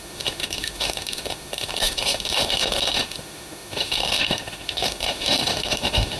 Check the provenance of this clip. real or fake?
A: fake